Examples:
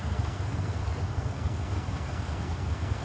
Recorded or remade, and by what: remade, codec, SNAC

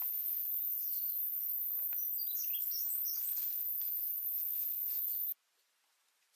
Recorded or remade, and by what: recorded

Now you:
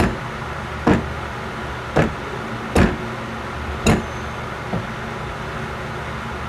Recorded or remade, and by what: recorded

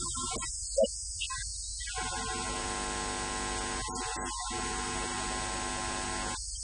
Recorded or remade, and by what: recorded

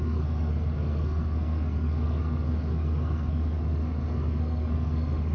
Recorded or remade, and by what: remade, codec, SNAC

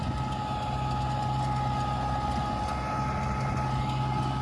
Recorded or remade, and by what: recorded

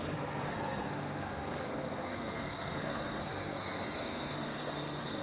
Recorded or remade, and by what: remade, codec, SNAC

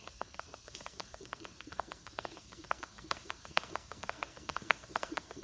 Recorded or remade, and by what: remade, codec, SNAC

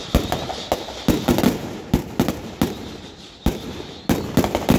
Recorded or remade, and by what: recorded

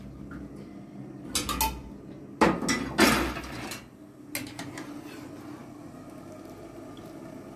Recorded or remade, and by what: recorded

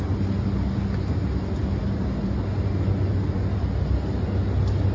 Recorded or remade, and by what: recorded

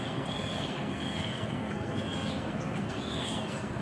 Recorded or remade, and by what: remade, codec, SNAC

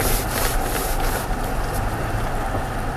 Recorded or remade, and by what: recorded